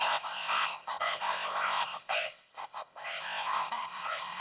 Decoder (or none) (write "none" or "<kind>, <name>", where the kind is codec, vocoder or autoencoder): codec, ZipCodec